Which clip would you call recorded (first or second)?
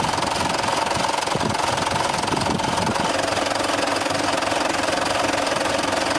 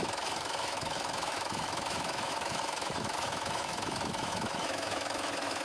first